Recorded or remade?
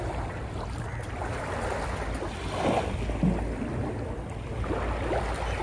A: recorded